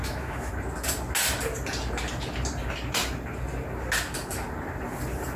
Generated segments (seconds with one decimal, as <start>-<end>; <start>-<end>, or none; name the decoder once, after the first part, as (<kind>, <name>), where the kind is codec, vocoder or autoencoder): 0.0-0.5 (autoencoder, DAC-VAE)